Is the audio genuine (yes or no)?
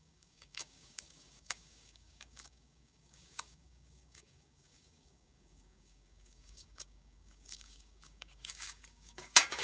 no